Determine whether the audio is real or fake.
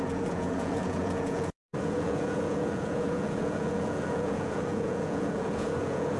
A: fake